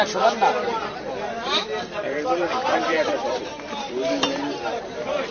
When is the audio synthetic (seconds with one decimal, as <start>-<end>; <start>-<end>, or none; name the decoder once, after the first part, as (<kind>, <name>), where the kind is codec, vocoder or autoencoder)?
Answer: 1.6-4.8 (vocoder, BigVGAN v2)